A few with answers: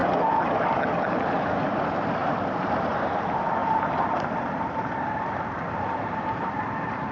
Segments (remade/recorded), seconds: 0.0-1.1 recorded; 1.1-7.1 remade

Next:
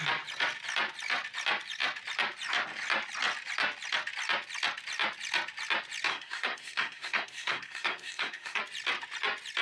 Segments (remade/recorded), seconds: 0.0-6.1 recorded; 6.1-8.6 remade; 8.6-9.6 recorded

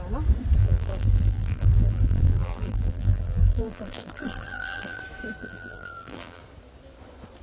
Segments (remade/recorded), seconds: 0.0-0.6 recorded; 0.6-5.0 remade; 5.0-5.4 recorded; 5.4-6.4 remade; 6.4-7.4 recorded